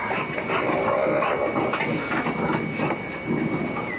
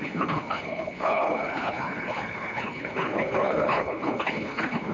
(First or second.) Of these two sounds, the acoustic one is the first